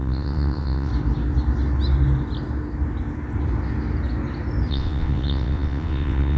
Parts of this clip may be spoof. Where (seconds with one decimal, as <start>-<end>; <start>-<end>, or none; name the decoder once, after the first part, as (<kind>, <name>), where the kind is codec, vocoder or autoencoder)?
0.0-0.9 (vocoder, WaveNeXt); 4.7-6.4

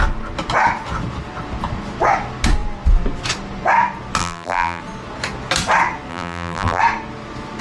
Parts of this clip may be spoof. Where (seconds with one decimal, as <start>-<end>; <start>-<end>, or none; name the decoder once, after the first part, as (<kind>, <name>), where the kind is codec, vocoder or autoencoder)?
4.2-4.8 (vocoder, BigVGAN v2); 6.1-6.8

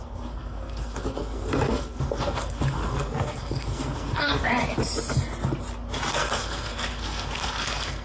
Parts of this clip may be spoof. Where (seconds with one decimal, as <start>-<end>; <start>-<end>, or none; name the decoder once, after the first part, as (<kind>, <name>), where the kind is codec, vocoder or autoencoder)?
0.0-4.5 (codec, SNAC); 6.1-8.0